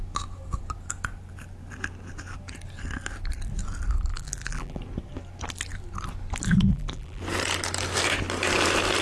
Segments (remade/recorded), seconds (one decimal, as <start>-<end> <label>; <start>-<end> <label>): 0.0-4.1 recorded; 4.1-4.8 remade; 4.8-6.7 recorded; 6.7-7.2 remade; 7.2-9.0 recorded